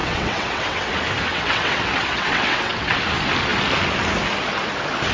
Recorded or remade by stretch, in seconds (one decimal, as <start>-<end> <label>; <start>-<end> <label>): 0.0-0.9 remade; 0.9-1.3 recorded; 1.3-3.0 remade; 3.0-5.1 recorded